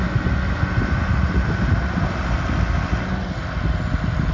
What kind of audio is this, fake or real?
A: real